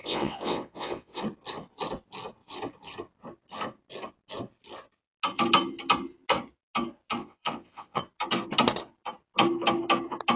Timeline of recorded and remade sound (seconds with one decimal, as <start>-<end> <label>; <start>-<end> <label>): 0.0-1.2 remade; 1.2-7.2 recorded; 7.2-8.0 remade; 8.0-10.4 recorded